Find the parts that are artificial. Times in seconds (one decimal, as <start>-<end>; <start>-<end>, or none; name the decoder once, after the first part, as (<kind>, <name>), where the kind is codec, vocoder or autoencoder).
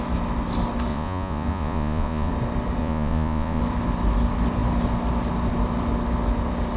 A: 0.9-2.3 (vocoder, Vocos); 2.8-3.6